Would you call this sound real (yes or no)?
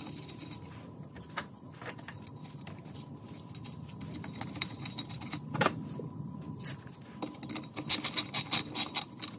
yes